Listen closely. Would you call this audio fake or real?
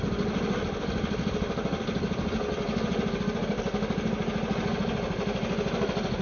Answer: real